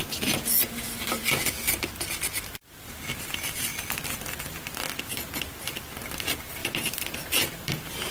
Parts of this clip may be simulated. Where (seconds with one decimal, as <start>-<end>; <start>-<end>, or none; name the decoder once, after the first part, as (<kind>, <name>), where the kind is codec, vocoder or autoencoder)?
3.7-4.3 (vocoder, BigVGAN v2); 6.6-7.5